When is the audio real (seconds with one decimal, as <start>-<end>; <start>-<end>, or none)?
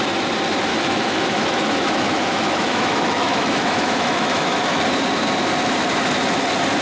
0.0-0.7; 4.8-6.8